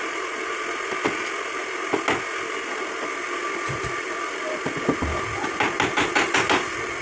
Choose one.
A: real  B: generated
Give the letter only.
A